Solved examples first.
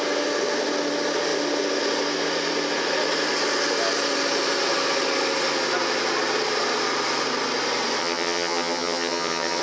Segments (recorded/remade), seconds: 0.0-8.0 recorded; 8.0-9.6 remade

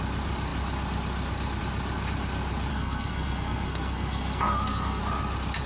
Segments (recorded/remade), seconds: 0.0-2.7 recorded; 2.7-5.0 remade; 5.0-5.7 recorded

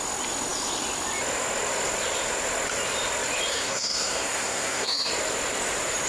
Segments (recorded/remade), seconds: 0.0-3.5 recorded; 3.5-5.1 remade; 5.1-6.1 recorded

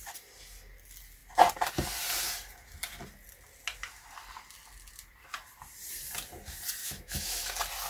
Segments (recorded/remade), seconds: 0.0-6.8 recorded; 6.8-7.4 remade; 7.4-7.9 recorded

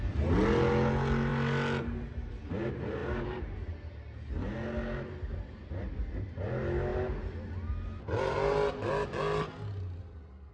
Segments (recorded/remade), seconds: 0.0-10.5 recorded

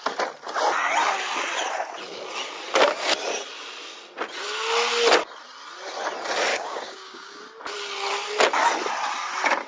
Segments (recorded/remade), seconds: 0.0-6.5 recorded; 6.5-7.4 remade; 7.4-9.7 recorded

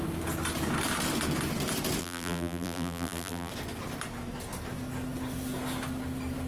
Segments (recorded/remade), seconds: 0.0-2.0 recorded; 2.0-3.5 remade; 3.5-6.5 recorded